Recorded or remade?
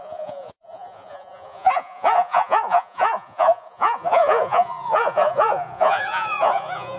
remade